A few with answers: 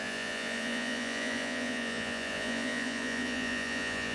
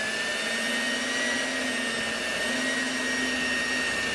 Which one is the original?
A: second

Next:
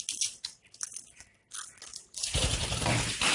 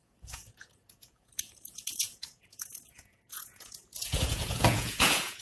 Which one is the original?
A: first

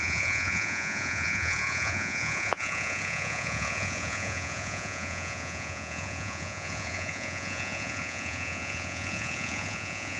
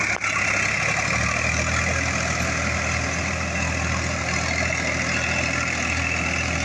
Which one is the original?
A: second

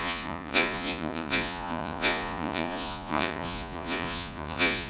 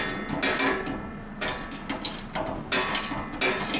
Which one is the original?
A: second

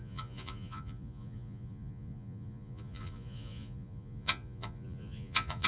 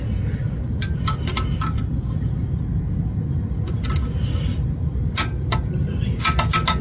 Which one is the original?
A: second